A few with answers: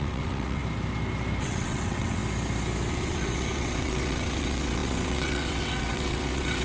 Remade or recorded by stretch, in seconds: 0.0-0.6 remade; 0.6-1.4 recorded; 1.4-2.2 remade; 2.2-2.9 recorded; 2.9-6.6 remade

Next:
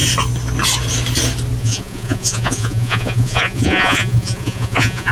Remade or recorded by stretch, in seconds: 0.0-1.6 recorded; 1.6-5.1 remade

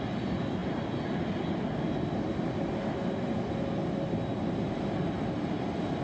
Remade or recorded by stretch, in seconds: 0.0-6.0 recorded

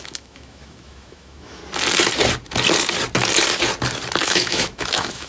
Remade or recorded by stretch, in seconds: 0.0-1.6 remade; 1.6-4.2 recorded; 4.2-5.3 remade

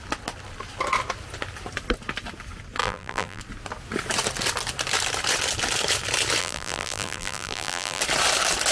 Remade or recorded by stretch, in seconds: 0.0-2.8 recorded; 2.8-3.4 remade; 3.4-6.4 recorded; 6.4-8.0 remade; 8.0-8.7 recorded